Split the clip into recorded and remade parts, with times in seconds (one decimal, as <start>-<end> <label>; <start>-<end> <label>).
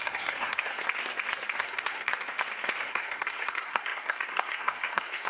0.0-0.8 remade; 0.8-1.6 recorded; 1.6-2.1 remade; 2.1-2.8 recorded; 2.8-5.3 remade